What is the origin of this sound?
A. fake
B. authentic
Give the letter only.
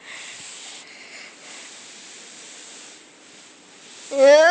B